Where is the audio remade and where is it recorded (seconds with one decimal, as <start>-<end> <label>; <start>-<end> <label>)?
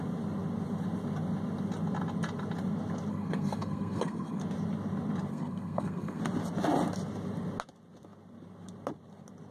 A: 0.0-3.1 recorded; 3.1-4.4 remade; 4.4-5.3 recorded; 5.3-6.2 remade; 6.2-9.5 recorded